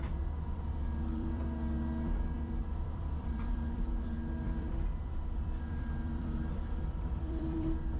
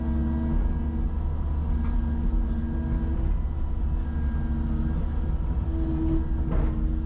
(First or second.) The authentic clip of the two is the second